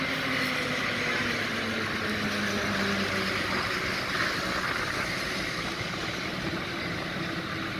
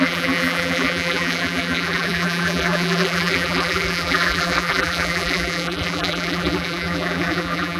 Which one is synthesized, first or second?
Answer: second